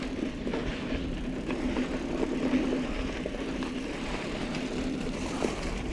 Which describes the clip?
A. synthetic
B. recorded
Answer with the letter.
A